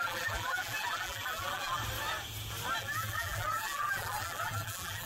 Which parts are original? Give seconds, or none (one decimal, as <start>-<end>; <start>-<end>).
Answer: 1.8-2.8